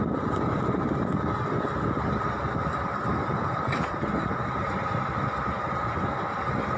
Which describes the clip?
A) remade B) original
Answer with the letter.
B